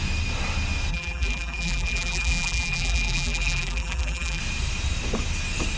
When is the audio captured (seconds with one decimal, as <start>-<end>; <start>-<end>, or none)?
0.0-0.9; 4.4-5.8